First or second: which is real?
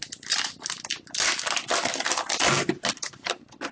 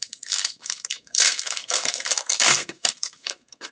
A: first